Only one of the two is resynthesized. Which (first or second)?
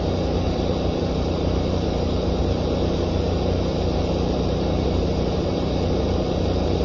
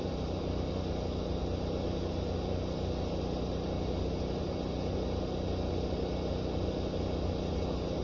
first